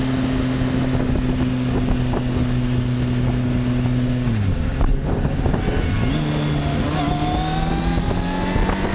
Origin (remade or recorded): recorded